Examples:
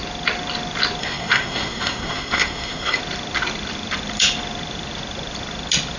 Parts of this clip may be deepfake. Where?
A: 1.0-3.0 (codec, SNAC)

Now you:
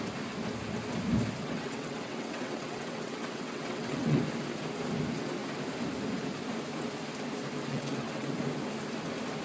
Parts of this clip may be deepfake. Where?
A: 1.4-4.2 (vocoder, WaveNeXt); 7.7-8.4

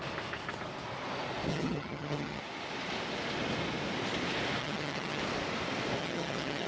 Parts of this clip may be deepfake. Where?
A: 1.5-2.4 (vocoder, HiFi-GAN); 4.6-5.2; 6.0-6.7

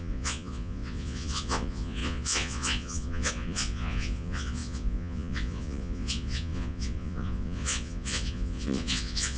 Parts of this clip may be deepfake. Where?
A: 0.0-9.4 (vocoder, Vocos)

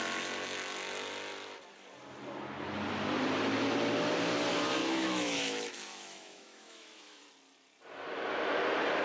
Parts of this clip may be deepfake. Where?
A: 4.8-7.2 (autoencoder, DAC-VAE)

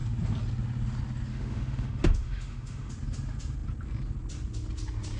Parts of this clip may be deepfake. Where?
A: 1.3-2.9 (autoencoder, DAC-VAE)

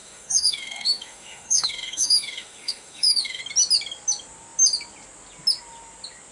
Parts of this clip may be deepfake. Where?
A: 0.0-3.4 (autoencoder, DAC-VAE)

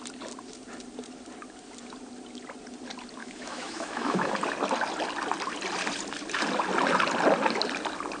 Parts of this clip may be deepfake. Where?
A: 3.2-4.3 (autoencoder, DAC-VAE)